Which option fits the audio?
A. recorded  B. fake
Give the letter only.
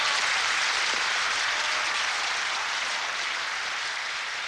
B